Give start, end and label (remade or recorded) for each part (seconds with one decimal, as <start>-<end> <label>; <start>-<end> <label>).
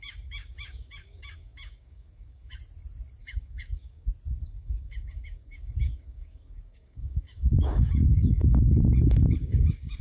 0.0-2.6 remade; 2.6-3.2 recorded; 3.2-4.1 remade; 4.1-4.6 recorded; 4.6-10.0 remade